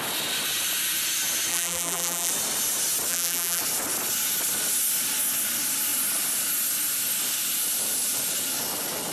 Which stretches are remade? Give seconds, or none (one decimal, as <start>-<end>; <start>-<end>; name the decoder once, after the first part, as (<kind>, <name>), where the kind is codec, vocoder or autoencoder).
1.5-2.3 (vocoder, BigVGAN v2); 3.1-3.6